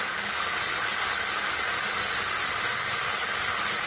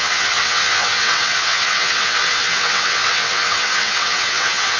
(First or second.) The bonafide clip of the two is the first